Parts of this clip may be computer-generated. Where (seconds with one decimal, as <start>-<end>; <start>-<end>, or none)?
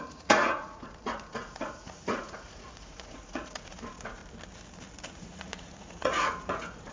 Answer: 0.0-4.2; 5.1-6.9